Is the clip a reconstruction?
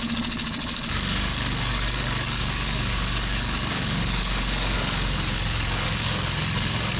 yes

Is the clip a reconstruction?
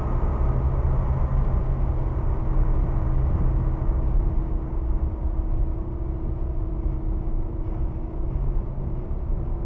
no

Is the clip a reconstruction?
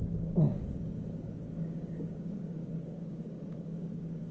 yes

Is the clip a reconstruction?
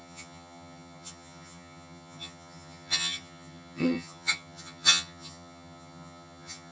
yes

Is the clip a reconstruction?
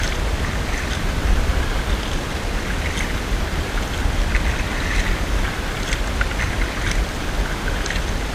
no